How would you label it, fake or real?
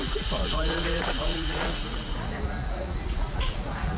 fake